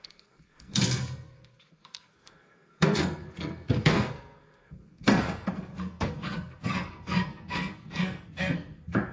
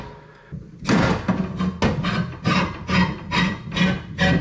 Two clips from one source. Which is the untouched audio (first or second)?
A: second